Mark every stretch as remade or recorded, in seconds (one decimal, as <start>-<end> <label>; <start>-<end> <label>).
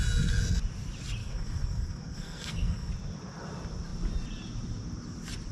0.0-1.2 recorded; 1.2-2.9 remade; 2.9-5.5 recorded